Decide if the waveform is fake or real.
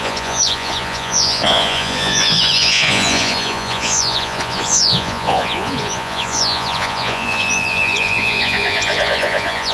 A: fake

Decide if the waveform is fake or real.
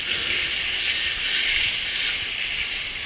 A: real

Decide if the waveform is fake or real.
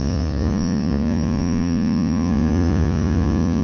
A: fake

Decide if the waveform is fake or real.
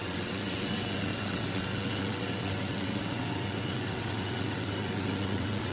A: fake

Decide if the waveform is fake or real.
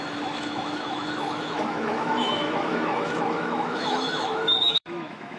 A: fake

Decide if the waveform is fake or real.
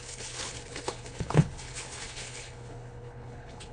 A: fake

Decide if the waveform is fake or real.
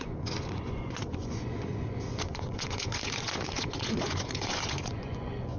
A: fake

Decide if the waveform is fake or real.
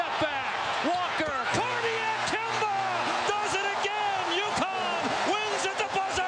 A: real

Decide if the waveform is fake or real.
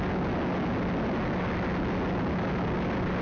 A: real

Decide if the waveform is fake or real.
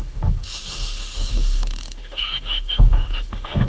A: fake